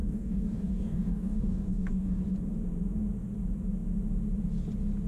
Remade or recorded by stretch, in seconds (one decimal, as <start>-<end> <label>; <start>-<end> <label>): 0.0-2.2 remade; 2.2-5.1 recorded